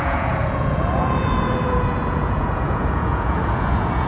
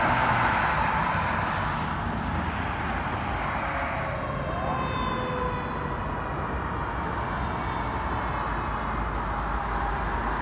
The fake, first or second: first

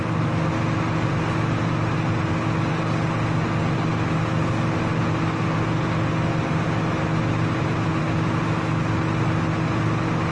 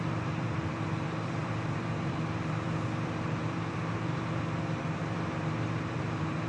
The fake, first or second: second